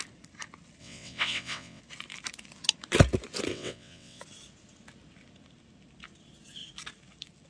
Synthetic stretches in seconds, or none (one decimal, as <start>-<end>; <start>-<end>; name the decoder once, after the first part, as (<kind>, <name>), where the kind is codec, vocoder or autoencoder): 0.8-1.8 (vocoder, WaveNeXt); 3.5-4.2